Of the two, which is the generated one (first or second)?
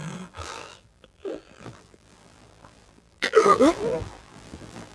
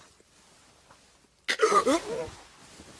first